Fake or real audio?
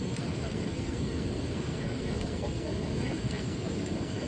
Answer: fake